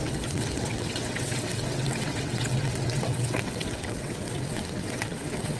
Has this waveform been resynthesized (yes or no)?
yes